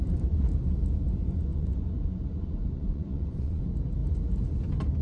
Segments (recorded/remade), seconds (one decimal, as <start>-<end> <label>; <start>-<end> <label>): 0.0-1.5 recorded; 1.5-3.6 remade; 3.6-5.0 recorded